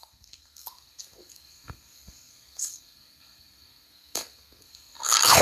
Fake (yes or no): yes